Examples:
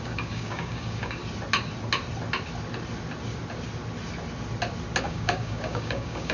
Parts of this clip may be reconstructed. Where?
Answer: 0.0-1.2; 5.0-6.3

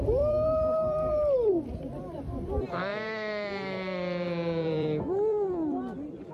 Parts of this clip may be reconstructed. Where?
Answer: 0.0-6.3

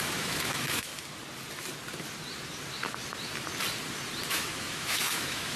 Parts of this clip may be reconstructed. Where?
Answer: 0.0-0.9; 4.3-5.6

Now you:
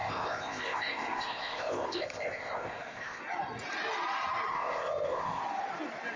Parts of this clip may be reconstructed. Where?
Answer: 0.0-3.2; 4.5-5.4

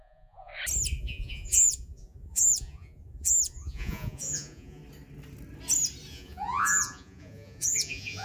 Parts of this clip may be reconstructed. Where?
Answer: 0.0-0.5; 1.0-4.8; 6.1-8.2

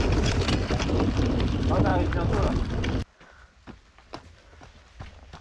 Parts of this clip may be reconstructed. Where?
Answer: none

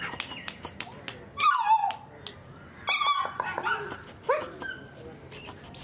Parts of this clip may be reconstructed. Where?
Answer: none

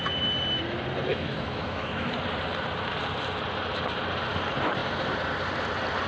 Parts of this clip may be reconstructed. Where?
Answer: 1.1-2.1